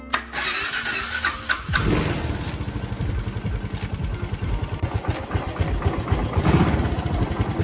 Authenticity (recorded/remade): recorded